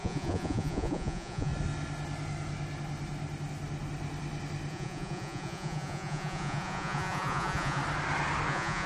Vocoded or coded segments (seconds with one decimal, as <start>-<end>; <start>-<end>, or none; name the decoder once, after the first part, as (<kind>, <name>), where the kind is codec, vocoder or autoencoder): 0.0-1.5 (vocoder, Vocos); 4.7-7.8; 8.5-8.9